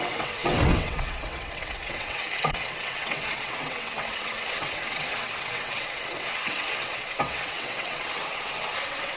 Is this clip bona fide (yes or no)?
no